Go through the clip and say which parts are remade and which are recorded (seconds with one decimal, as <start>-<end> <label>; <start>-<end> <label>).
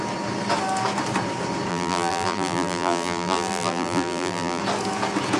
0.0-1.7 recorded; 1.7-4.6 remade; 4.6-5.4 recorded